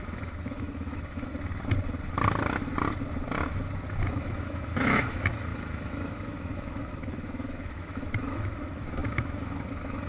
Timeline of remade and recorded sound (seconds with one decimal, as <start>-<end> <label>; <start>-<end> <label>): 0.0-1.3 remade; 1.3-4.1 recorded; 4.1-10.1 remade